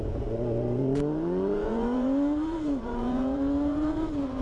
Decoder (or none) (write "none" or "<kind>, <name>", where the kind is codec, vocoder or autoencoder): vocoder, Vocos